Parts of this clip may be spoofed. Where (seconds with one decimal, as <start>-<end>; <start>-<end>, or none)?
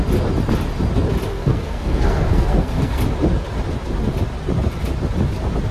1.3-3.0